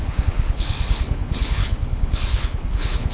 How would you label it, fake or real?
fake